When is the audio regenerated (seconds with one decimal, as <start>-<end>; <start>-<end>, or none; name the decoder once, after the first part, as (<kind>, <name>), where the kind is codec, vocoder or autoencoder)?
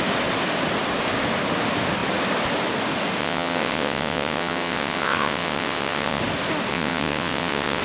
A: 3.2-6.2 (vocoder, WaveNeXt); 6.7-7.8